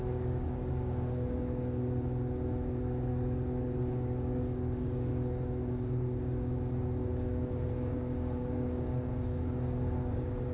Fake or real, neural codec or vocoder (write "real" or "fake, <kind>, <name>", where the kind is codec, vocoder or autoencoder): fake, codec, DAC